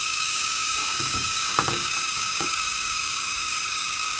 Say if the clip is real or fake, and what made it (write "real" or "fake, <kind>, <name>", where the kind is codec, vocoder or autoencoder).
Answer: fake, codec, DAC